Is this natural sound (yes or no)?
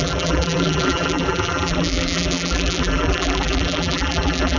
no